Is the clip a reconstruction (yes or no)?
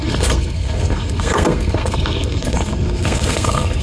yes